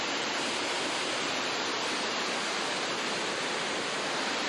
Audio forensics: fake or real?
fake